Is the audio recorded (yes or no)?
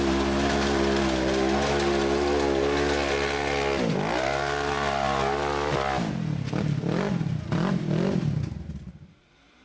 yes